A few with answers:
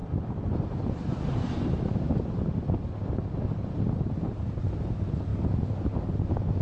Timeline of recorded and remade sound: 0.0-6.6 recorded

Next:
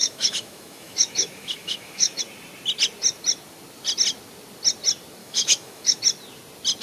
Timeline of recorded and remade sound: 0.0-2.2 remade; 2.2-5.2 recorded; 5.2-6.0 remade; 6.0-6.8 recorded